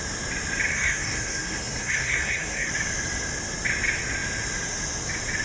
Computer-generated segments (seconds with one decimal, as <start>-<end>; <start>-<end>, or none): 0.7-2.7